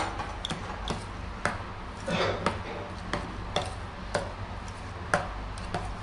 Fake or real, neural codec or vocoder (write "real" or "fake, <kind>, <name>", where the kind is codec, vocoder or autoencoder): real